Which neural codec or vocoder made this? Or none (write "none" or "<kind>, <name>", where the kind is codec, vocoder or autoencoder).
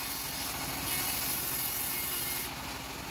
none